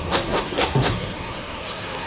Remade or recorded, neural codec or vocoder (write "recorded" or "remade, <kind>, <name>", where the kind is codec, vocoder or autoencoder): remade, codec, SNAC